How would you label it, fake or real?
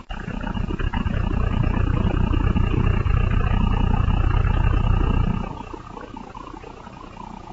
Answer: fake